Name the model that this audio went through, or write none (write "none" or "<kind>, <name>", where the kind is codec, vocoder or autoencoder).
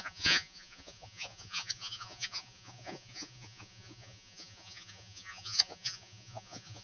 vocoder, Vocos